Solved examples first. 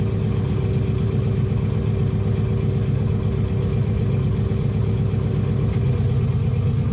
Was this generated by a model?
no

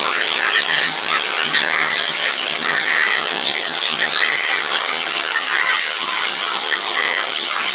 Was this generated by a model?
yes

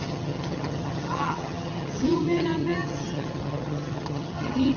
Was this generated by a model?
yes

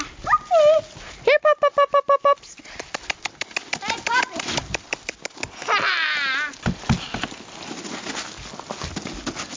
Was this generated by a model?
no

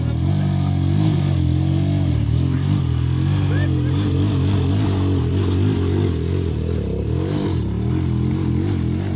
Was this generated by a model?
no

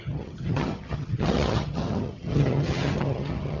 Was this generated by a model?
yes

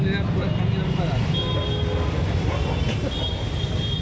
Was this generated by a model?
no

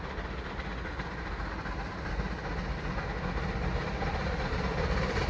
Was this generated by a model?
no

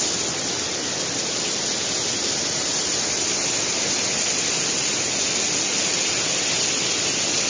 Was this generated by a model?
no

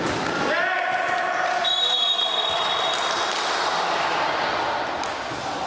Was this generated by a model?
no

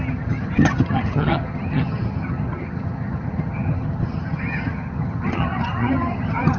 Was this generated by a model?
yes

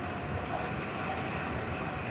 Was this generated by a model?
no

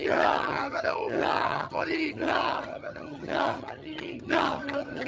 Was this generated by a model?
yes